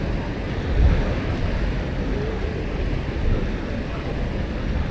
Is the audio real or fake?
real